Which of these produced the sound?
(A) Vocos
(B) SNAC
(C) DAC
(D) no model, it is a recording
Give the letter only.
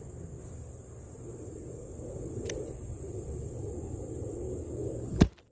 D